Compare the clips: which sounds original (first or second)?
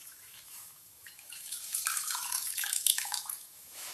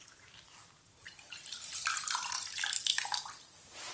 second